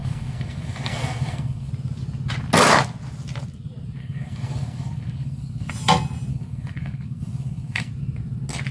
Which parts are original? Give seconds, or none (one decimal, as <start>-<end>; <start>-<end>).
1.7-4.0; 5.7-6.3; 7.9-8.7